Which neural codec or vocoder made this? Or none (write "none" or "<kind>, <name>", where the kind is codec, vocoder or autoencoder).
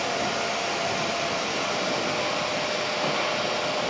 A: none